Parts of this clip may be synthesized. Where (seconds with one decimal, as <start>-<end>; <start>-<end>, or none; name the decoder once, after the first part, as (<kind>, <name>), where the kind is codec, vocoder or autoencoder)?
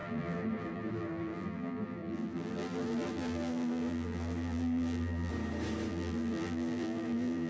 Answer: 0.0-5.3 (vocoder, BigVGAN v2); 5.9-7.5